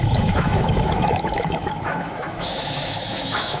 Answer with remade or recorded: remade